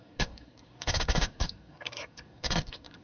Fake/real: fake